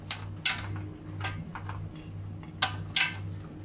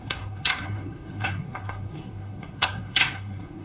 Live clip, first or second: first